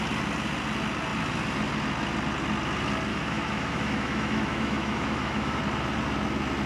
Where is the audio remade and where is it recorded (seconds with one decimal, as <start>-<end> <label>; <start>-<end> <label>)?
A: 0.0-3.1 recorded; 3.1-5.6 remade; 5.6-6.7 recorded